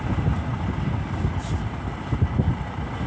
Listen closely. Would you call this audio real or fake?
real